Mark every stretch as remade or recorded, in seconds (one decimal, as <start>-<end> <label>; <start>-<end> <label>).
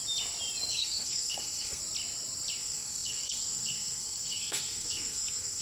0.0-0.7 recorded; 0.7-1.8 remade; 1.8-2.6 recorded; 2.6-5.6 remade